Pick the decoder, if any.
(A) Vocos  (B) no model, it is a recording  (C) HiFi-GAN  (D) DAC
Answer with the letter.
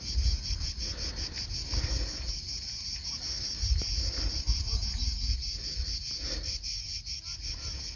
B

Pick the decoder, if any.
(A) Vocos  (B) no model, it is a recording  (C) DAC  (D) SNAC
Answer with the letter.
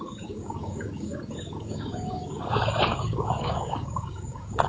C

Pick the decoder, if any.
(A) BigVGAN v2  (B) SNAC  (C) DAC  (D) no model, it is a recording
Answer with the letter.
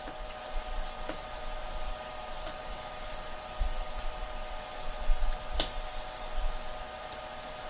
D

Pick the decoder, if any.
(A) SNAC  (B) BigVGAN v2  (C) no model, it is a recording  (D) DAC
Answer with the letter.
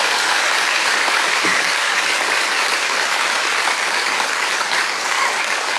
D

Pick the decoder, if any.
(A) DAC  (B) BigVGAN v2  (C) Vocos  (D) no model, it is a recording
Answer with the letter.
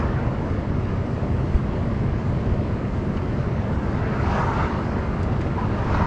A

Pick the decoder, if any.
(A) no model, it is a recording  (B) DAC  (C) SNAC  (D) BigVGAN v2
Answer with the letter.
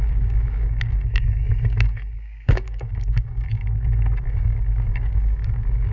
B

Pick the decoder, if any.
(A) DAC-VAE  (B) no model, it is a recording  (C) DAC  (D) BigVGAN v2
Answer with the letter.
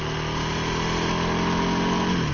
B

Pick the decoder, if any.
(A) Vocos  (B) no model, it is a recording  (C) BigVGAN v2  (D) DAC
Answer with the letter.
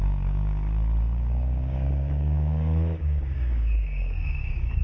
D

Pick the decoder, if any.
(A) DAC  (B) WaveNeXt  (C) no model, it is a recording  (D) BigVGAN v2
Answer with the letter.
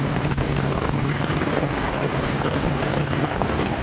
A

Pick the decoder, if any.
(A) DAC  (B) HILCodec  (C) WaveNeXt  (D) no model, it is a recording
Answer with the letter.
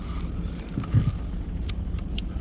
D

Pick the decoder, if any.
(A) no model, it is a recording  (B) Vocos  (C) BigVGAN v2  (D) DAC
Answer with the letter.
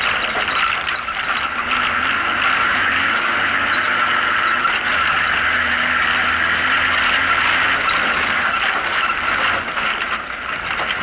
A